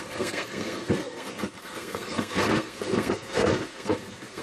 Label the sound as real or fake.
fake